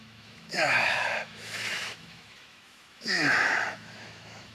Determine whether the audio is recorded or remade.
remade